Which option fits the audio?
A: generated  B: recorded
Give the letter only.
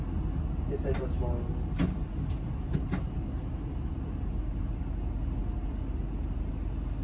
B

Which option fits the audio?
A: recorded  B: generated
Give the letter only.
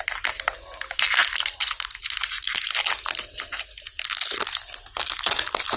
A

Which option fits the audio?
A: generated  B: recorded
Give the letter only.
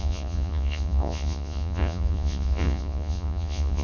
A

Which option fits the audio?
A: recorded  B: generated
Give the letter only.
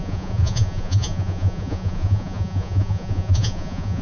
B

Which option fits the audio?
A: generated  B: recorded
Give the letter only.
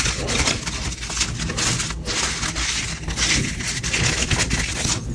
B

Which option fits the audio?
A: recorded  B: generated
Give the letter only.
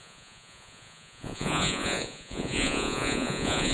B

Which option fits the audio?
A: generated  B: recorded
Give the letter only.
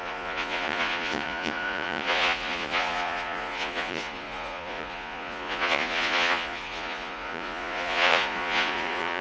A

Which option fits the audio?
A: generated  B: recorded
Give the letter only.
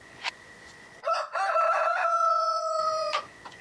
A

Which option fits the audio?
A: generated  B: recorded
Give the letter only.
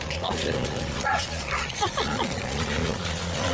A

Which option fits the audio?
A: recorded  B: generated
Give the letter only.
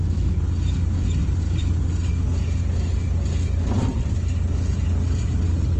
A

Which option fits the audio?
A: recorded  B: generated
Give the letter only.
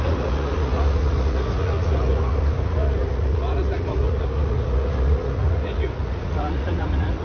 B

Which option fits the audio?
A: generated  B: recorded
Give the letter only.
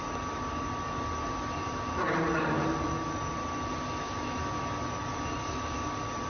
B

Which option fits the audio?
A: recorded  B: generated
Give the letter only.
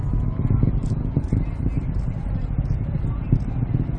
A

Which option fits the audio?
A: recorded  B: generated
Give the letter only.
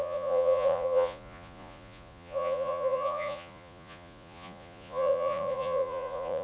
B